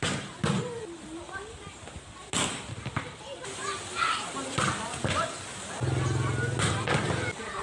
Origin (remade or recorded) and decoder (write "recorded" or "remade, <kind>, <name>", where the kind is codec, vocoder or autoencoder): recorded